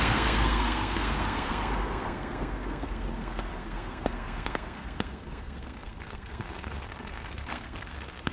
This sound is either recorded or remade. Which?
remade